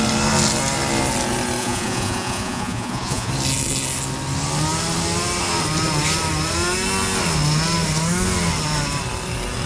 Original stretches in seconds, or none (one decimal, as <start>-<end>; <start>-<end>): 0.0-1.6; 3.3-9.7